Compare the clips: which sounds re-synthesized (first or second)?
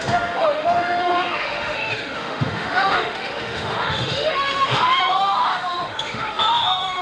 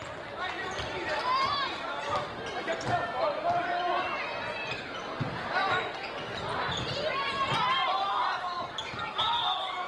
first